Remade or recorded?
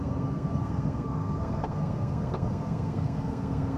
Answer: remade